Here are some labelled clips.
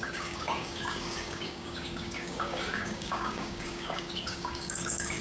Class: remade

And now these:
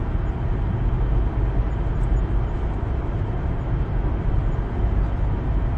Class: recorded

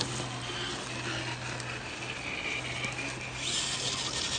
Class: recorded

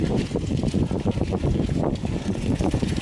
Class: remade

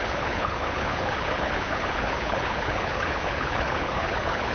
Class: remade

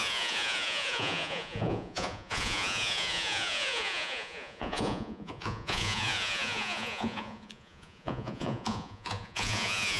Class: remade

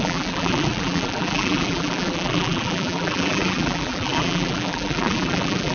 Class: remade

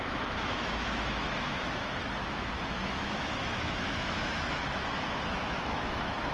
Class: remade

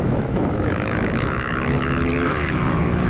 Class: remade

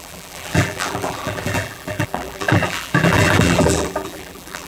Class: remade